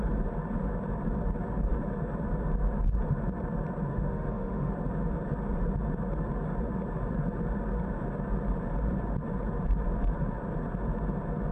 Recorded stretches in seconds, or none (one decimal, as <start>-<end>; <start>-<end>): 0.0-3.9; 4.7-11.5